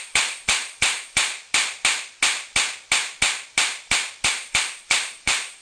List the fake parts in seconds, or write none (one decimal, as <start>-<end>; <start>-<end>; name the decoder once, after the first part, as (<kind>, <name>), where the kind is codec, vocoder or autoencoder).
0.0-1.3 (vocoder, Vocos); 4.3-5.6